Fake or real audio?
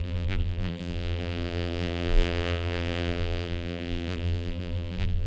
fake